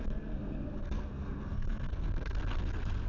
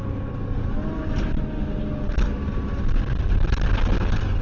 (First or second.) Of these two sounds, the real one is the second